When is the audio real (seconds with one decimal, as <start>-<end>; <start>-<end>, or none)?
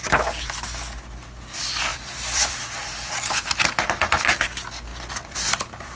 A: 0.0-1.9; 3.1-4.9; 5.6-6.0